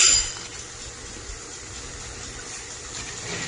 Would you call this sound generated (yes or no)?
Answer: no